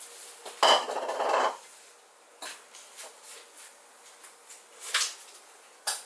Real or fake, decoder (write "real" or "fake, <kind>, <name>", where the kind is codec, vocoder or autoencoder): real